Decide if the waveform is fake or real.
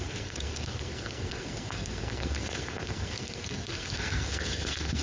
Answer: fake